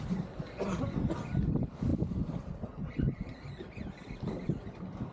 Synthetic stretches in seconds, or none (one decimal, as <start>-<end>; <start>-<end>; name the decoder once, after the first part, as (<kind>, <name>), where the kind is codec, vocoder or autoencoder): none